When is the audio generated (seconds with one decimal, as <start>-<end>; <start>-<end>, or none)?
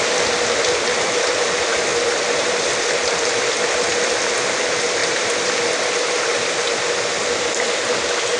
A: 1.9-2.5; 5.0-7.3